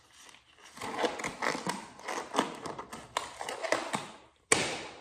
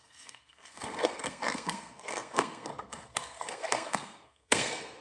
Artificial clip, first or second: second